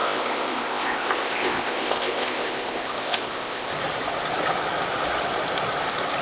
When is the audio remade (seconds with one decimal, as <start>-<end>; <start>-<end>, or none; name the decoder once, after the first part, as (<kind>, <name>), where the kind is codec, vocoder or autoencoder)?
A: 0.0-3.7 (codec, ZipCodec)